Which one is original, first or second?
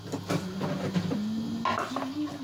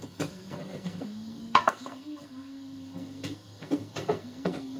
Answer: first